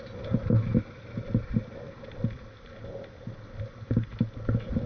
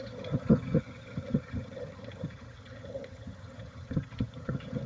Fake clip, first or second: second